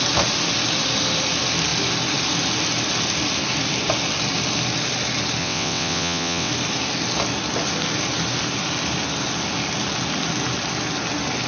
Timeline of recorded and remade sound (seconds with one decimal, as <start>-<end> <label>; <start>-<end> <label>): 0.0-5.4 recorded; 5.4-6.5 remade; 6.5-11.5 recorded